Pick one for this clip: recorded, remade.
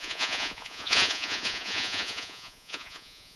remade